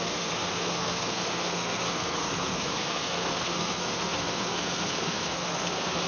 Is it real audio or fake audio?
fake